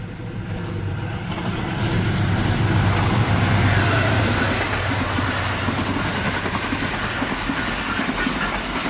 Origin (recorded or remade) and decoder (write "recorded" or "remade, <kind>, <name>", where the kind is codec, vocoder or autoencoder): recorded